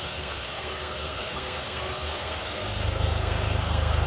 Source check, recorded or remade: remade